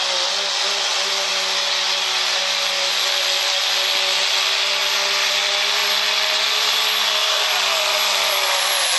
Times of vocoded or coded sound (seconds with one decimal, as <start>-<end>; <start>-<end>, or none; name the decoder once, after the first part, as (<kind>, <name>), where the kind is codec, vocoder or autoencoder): none

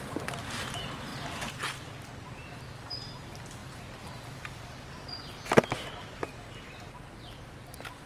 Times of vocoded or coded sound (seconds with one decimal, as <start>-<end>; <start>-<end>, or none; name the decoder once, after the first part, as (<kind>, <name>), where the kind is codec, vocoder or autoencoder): none

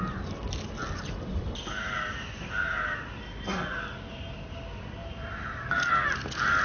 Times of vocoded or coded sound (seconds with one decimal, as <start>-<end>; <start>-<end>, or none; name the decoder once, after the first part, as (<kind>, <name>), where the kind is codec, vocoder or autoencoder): 5.0-5.6 (vocoder, BigVGAN v2)

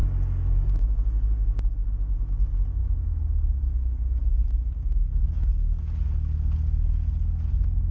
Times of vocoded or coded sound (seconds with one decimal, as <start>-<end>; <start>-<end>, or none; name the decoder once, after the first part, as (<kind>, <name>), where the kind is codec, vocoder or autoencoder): none

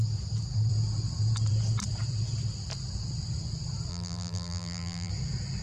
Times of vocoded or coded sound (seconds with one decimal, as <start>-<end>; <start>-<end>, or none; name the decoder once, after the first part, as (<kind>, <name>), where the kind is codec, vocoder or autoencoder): 3.9-5.1 (vocoder, BigVGAN v2)

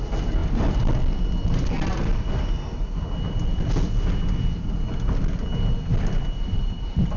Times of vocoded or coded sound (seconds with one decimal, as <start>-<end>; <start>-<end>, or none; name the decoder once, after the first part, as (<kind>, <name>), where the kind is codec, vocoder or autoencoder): 0.4-1.2 (vocoder, BigVGAN v2)

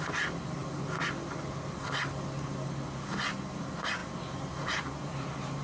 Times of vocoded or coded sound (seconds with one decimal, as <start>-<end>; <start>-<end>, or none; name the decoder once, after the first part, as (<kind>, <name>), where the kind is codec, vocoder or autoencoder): none